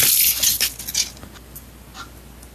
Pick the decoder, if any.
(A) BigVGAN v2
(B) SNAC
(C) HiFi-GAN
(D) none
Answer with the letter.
D